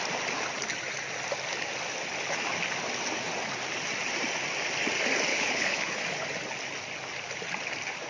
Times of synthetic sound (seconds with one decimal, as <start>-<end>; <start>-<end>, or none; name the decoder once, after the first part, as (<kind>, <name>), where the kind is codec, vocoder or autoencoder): 5.3-6.0 (codec, HILCodec)